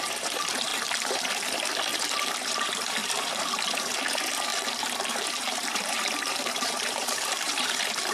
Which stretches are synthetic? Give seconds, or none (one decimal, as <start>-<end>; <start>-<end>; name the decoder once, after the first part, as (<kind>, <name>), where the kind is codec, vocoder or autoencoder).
0.0-0.7 (vocoder, BigVGAN v2); 2.2-3.0; 3.7-8.1

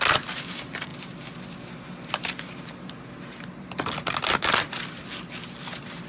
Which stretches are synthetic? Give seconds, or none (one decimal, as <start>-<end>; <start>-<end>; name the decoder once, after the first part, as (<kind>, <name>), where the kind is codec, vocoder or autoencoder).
none

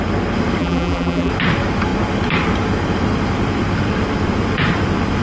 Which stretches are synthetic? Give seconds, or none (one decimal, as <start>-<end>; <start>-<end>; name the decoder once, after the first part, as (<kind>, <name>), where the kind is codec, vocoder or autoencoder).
0.6-1.3 (vocoder, BigVGAN v2)

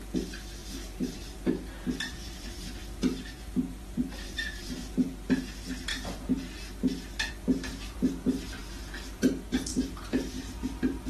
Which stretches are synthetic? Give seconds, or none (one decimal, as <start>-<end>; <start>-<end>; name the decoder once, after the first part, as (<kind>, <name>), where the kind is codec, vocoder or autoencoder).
0.6-5.4 (vocoder, BigVGAN v2)

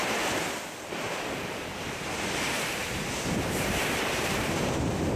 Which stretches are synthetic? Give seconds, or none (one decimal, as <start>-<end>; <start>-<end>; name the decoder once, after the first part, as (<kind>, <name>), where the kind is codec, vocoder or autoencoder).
0.8-2.8 (vocoder, BigVGAN v2); 3.6-5.2

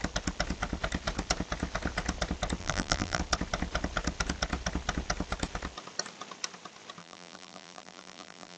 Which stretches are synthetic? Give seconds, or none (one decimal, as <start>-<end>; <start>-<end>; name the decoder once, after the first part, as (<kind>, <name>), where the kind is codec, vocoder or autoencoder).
2.6-3.2 (vocoder, BigVGAN v2); 7.0-8.6